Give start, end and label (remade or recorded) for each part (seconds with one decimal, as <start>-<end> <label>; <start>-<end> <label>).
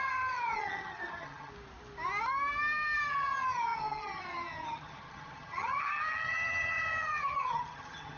0.0-1.5 remade; 1.5-3.1 recorded; 3.1-8.2 remade